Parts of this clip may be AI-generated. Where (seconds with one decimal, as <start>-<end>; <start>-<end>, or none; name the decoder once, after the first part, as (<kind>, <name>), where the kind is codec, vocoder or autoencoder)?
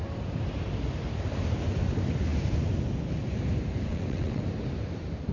3.9-4.4 (vocoder, WaveNeXt)